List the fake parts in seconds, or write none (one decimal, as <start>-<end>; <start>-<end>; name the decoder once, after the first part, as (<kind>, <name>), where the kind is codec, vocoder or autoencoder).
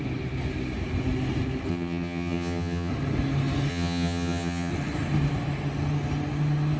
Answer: 1.7-2.9 (vocoder, HiFi-GAN); 3.7-4.7